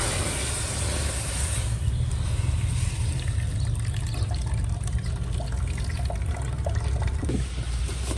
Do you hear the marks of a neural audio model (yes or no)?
no